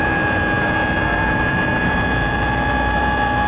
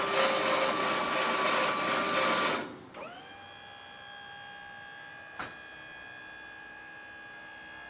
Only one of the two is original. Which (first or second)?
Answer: second